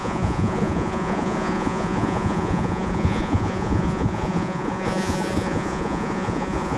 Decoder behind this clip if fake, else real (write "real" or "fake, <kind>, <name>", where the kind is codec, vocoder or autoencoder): fake, vocoder, Vocos